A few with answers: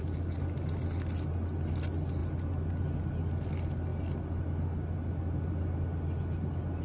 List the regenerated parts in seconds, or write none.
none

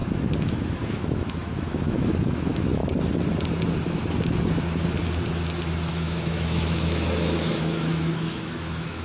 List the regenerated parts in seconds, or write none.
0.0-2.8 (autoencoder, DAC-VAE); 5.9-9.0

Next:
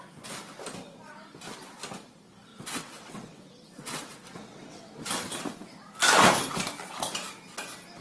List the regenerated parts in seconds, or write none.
2.5-5.0 (vocoder, WaveNeXt)

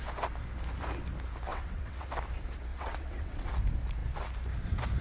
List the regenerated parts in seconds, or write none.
1.5-2.1 (vocoder, WaveNeXt); 2.7-3.5